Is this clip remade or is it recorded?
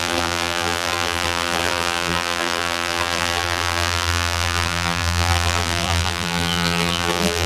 remade